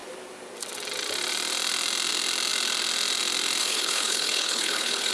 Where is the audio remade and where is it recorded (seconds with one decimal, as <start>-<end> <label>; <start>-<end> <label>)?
0.0-3.6 recorded; 3.6-5.1 remade